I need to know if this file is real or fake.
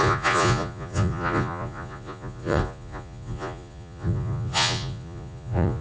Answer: fake